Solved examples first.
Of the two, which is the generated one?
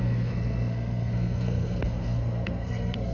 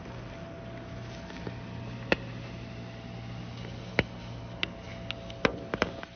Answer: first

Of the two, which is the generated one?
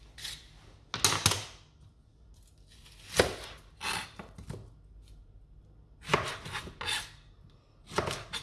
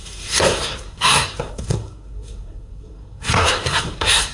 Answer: second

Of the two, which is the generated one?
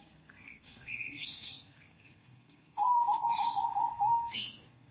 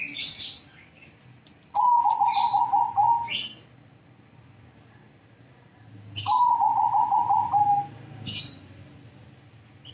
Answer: first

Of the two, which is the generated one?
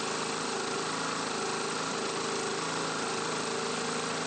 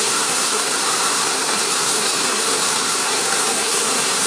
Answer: second